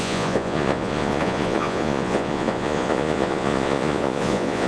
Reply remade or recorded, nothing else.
remade